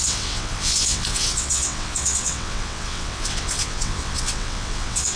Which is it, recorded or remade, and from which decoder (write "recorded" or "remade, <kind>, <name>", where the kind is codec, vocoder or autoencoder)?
remade, vocoder, WaveNeXt